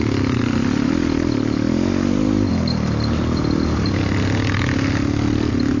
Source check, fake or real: real